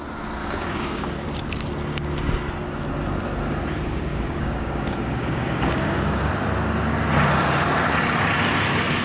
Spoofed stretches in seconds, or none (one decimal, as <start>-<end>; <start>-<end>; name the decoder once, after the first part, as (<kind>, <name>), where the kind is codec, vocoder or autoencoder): 0.4-1.0 (codec, DAC); 4.1-6.3